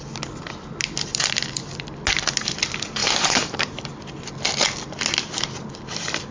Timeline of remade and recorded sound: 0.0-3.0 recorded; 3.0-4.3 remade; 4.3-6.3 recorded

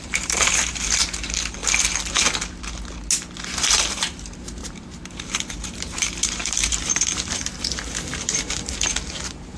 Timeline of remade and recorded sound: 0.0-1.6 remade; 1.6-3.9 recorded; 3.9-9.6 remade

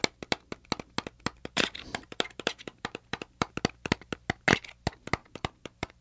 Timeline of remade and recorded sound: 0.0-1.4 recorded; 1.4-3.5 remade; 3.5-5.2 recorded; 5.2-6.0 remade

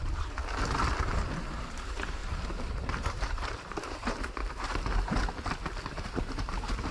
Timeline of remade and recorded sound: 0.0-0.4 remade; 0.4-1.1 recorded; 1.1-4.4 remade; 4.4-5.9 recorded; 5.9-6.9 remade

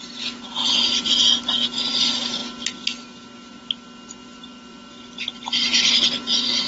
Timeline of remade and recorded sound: 0.0-4.2 recorded; 4.2-4.9 remade; 4.9-6.7 recorded

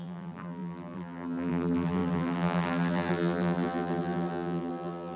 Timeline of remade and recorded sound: 0.0-5.2 remade

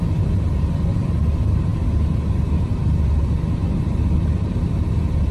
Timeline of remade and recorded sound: 0.0-5.3 remade

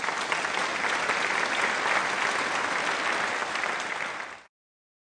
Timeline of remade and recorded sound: 0.0-5.2 recorded